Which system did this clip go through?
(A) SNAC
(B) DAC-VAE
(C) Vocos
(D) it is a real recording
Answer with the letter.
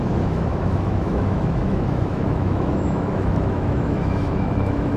B